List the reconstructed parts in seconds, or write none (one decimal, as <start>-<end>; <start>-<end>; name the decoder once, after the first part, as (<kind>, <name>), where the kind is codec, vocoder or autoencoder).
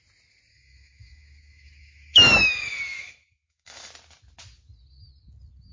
0.5-3.9 (autoencoder, DAC-VAE)